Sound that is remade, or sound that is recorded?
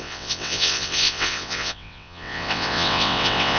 remade